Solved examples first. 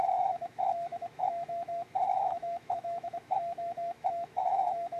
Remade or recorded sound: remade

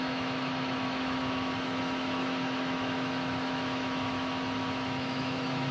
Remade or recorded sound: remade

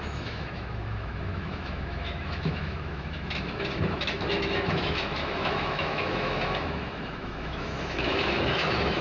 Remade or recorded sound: remade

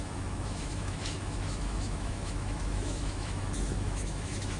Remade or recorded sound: remade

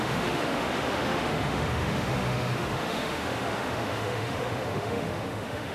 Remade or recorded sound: remade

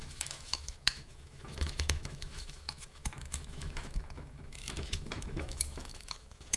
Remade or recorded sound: remade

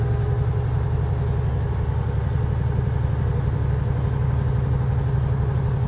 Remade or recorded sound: recorded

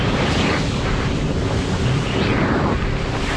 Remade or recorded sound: recorded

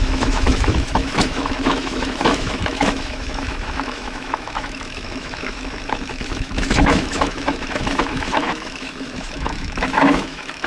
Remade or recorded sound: remade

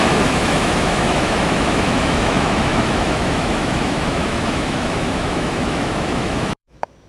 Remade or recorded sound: remade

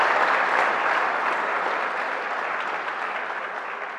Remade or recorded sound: recorded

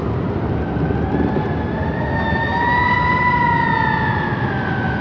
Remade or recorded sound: recorded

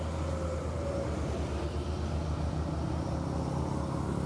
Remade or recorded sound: recorded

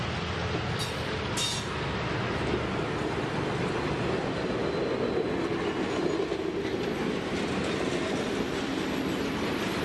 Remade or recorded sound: recorded